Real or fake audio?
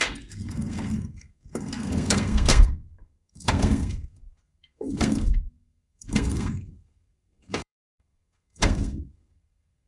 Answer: fake